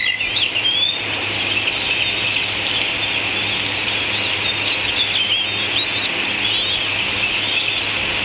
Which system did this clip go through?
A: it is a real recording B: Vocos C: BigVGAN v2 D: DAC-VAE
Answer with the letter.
A